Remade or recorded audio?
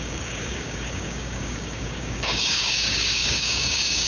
remade